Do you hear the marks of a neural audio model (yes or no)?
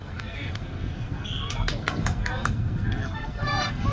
yes